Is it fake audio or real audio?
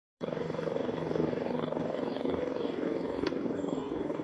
fake